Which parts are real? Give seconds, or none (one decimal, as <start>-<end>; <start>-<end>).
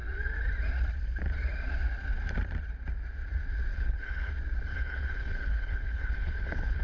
0.0-3.7; 4.3-4.7